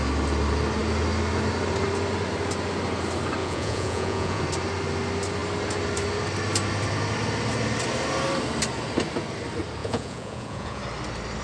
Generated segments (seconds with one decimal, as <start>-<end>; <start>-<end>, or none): 3.4-4.4; 9.8-10.8